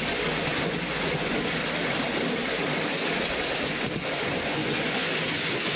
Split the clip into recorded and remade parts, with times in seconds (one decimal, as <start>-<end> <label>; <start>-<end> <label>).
0.0-1.6 remade; 1.6-3.2 recorded; 3.2-5.8 remade